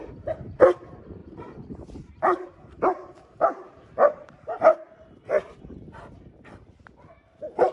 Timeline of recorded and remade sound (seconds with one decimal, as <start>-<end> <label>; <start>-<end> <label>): 0.0-7.7 remade